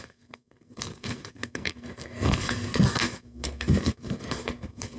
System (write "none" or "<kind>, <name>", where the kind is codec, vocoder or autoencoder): codec, SNAC